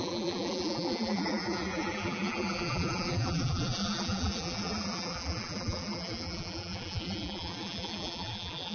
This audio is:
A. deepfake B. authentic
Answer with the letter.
A